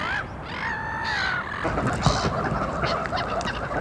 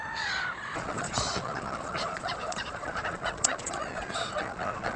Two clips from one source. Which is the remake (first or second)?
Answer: second